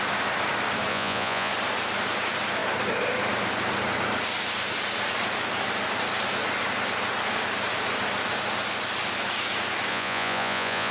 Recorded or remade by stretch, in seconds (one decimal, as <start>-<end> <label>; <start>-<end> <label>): 0.0-0.9 recorded; 0.9-1.5 remade; 1.5-9.9 recorded; 9.9-10.9 remade